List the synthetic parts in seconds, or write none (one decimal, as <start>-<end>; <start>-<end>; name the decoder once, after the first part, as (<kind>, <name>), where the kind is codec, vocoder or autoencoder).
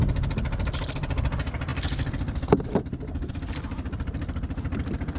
none